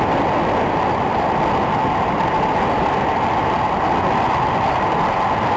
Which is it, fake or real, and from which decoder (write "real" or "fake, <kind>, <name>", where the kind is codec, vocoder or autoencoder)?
real